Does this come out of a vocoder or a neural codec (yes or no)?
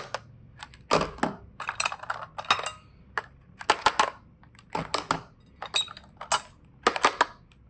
no